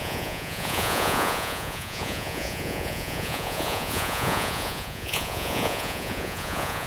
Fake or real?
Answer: fake